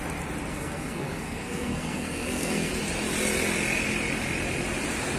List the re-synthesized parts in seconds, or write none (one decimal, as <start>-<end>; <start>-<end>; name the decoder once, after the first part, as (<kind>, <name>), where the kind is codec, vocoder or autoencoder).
0.5-2.7 (codec, SNAC)